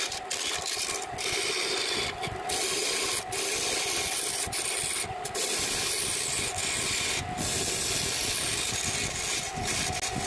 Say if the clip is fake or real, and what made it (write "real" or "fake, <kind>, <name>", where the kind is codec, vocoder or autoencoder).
real